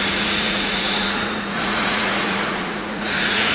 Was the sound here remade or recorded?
remade